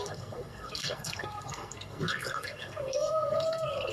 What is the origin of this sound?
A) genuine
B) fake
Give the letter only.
B